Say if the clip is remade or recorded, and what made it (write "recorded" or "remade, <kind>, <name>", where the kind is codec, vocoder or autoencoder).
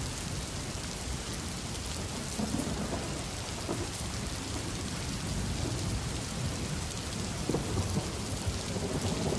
recorded